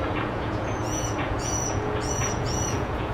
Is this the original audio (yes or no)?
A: no